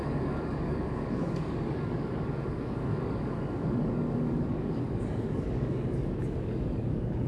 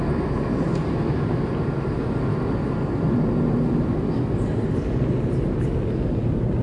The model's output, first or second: first